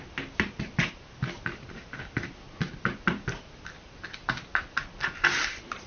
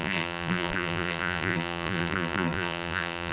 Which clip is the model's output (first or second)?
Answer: second